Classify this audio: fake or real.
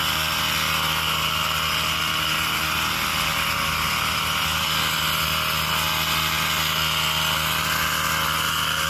real